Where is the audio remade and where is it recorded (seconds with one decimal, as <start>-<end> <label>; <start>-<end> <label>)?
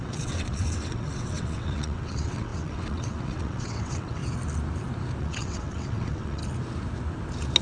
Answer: 0.0-4.2 remade; 4.2-5.2 recorded; 5.2-6.4 remade; 6.4-7.6 recorded